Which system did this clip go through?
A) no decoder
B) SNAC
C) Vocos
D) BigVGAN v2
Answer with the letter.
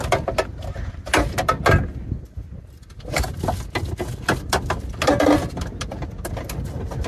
A